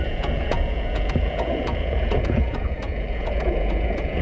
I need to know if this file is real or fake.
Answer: fake